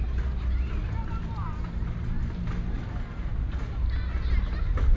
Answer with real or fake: real